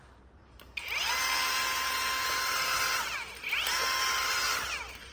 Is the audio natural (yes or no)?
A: yes